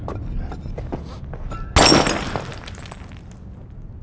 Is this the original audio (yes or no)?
yes